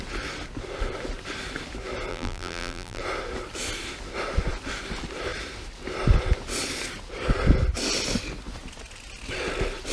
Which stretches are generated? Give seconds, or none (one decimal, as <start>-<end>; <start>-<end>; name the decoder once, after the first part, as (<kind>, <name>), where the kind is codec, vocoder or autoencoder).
2.1-3.0 (vocoder, BigVGAN v2)